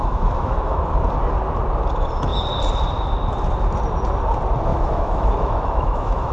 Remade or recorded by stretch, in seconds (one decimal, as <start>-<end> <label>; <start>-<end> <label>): 0.0-0.8 remade; 0.8-4.7 recorded; 4.7-6.3 remade